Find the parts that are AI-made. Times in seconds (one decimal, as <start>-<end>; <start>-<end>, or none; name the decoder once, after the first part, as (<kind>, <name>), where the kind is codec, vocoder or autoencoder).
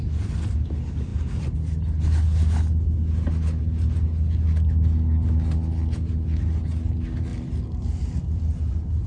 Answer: none